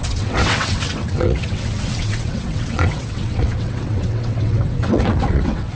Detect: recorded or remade remade